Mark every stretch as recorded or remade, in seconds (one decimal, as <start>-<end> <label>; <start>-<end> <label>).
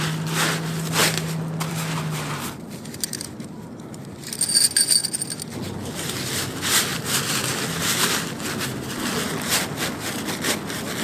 0.0-11.0 recorded